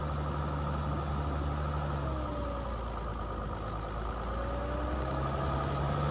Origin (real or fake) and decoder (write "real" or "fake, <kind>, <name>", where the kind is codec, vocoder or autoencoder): real